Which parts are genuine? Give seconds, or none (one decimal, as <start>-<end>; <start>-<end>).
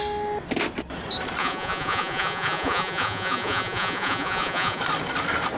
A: 0.0-1.4; 4.8-5.6